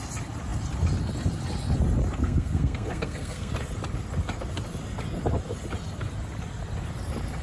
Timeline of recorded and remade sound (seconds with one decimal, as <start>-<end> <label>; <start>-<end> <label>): 0.0-2.2 recorded; 2.2-3.5 remade; 3.5-7.4 recorded